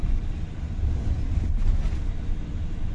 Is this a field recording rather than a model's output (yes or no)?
yes